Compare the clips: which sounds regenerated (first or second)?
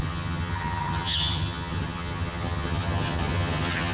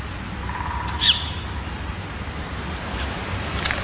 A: first